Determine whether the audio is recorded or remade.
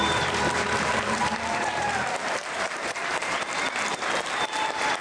remade